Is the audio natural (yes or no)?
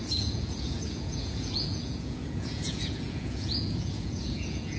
no